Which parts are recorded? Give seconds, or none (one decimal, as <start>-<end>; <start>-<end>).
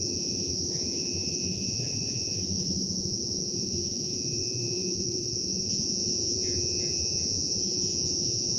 none